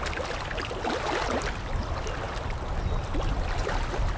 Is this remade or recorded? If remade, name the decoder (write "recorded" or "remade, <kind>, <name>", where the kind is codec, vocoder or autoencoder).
recorded